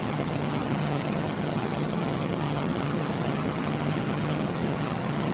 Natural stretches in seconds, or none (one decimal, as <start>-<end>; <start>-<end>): none